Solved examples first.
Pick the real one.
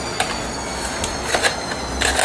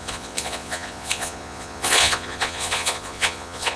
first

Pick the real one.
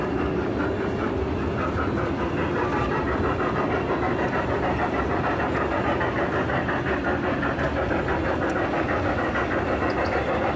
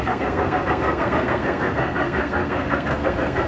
first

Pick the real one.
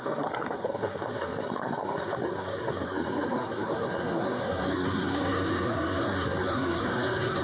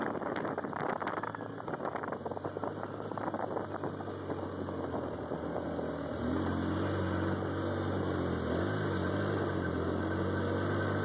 second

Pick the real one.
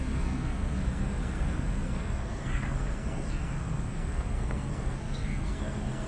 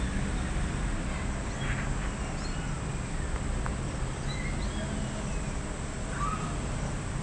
second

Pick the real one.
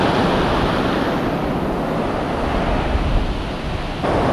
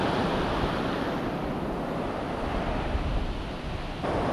first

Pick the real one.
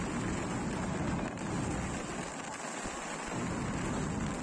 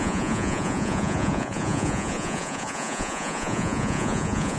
first